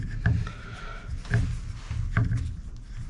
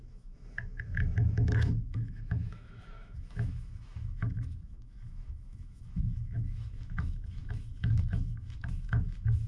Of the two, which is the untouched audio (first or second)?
first